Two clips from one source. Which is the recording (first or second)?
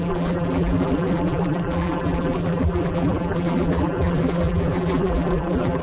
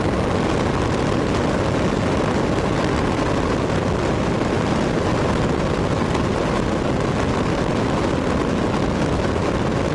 second